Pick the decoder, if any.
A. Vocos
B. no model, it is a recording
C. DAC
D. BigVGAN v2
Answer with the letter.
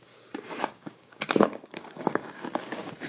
C